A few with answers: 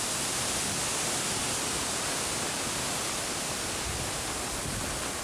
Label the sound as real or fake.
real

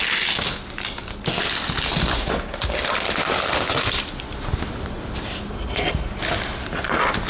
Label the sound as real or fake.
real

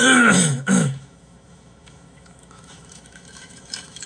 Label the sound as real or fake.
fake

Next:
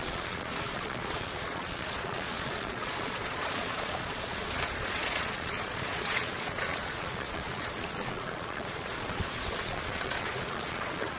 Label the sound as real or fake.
fake